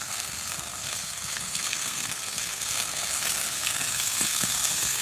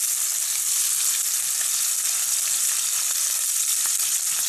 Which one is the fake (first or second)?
first